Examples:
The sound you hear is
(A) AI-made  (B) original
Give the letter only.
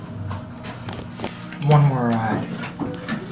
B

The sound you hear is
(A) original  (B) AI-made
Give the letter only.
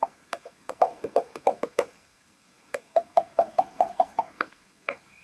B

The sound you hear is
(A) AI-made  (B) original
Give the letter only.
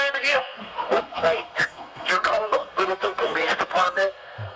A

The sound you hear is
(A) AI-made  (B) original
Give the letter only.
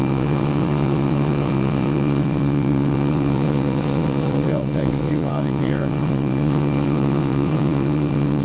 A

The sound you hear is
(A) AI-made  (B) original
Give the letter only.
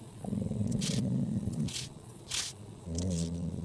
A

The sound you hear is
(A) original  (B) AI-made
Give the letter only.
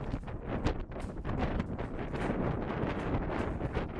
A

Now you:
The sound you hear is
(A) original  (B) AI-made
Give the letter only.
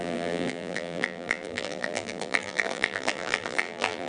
B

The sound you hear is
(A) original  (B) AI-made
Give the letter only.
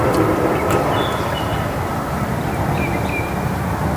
A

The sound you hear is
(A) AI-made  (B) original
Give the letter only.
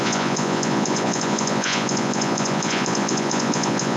A